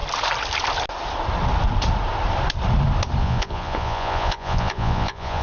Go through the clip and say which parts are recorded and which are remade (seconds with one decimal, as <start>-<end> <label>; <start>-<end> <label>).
0.0-3.2 recorded; 3.2-5.4 remade

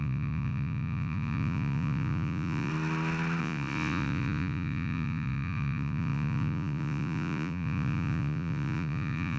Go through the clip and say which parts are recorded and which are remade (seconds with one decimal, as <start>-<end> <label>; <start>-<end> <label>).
0.0-2.7 remade; 2.7-3.4 recorded; 3.4-9.4 remade

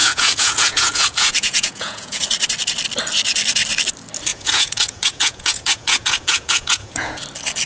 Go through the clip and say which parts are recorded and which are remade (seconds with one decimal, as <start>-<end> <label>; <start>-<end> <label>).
0.0-2.2 remade; 2.2-4.3 recorded; 4.3-7.2 remade; 7.2-7.7 recorded

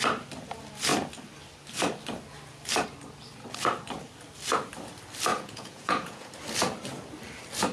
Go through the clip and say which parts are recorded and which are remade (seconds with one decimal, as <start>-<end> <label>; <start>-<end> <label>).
0.0-5.3 recorded; 5.3-6.3 remade; 6.3-7.7 recorded

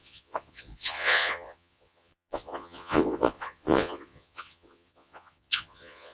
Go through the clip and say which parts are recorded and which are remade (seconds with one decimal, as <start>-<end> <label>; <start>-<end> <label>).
0.0-6.1 remade

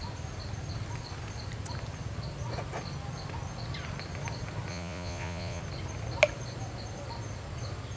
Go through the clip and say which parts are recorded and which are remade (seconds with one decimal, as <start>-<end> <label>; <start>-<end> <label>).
0.0-4.7 recorded; 4.7-5.6 remade; 5.6-8.0 recorded

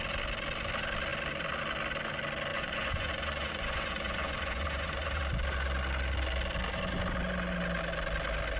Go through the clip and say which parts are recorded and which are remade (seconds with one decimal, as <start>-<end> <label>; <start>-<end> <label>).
0.0-2.5 recorded; 2.5-5.2 remade; 5.2-8.6 recorded